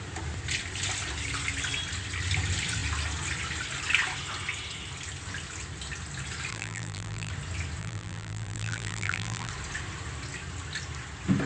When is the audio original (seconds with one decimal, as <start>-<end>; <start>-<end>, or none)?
0.0-6.5; 7.3-7.8; 9.5-11.5